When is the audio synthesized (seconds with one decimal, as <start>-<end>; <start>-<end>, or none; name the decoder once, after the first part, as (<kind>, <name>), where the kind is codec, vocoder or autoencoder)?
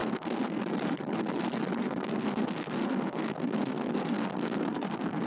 0.0-0.6 (codec, SNAC); 1.8-5.3